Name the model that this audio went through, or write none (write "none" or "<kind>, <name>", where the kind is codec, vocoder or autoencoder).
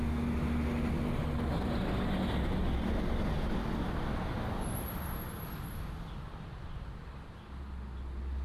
none